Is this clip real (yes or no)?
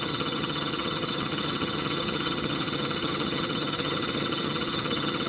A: no